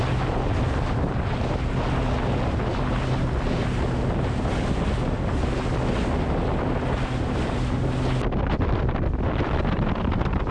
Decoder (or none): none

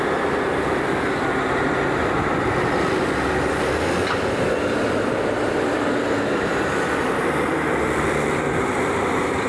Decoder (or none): vocoder, BigVGAN v2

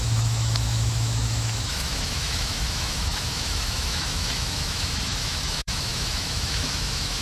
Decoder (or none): autoencoder, DAC-VAE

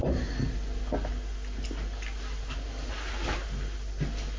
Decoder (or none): none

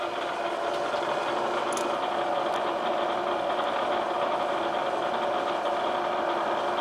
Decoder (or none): none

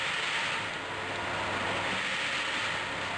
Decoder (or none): none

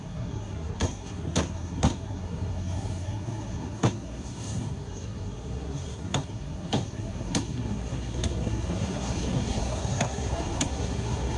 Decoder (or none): codec, SNAC